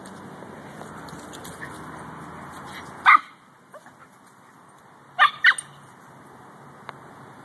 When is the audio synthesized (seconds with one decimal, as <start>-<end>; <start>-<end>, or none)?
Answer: none